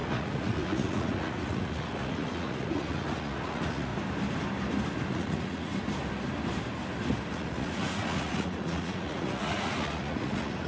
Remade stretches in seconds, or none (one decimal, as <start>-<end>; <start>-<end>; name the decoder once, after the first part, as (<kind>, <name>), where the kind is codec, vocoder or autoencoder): 0.0-3.9 (vocoder, Vocos); 5.1-5.7; 7.3-10.7

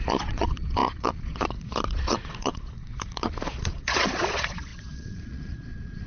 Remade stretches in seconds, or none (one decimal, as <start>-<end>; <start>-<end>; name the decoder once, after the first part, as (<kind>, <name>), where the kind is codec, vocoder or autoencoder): 0.0-6.1 (vocoder, Vocos)

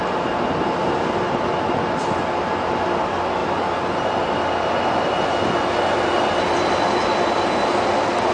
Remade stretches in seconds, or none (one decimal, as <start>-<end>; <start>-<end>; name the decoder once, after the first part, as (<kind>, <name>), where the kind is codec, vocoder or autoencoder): none

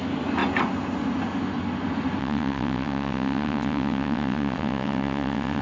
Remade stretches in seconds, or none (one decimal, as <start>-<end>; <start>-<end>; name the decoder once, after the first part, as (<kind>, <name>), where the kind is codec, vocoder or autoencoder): 2.2-5.6 (vocoder, WaveNeXt)

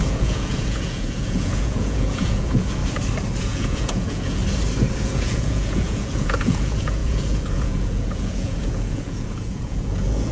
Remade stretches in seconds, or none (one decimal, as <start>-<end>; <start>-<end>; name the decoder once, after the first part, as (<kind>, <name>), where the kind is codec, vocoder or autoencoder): 0.0-2.8 (vocoder, Vocos); 3.4-4.4; 5.0-10.3

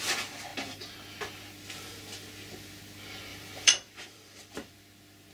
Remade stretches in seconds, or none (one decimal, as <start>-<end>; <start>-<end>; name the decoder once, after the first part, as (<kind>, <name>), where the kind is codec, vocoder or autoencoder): 3.3-4.7 (vocoder, BigVGAN v2)

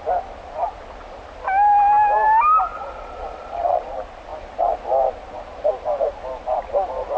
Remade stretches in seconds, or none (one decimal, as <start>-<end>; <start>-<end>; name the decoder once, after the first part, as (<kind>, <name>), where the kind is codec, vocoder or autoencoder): 2.7-3.9 (vocoder, Vocos)